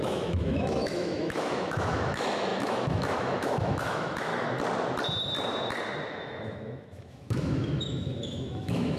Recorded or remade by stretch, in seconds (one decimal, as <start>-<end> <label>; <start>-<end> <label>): 0.0-4.3 remade; 4.3-6.1 recorded; 6.1-9.0 remade